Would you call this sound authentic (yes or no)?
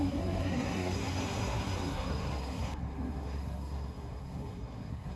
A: no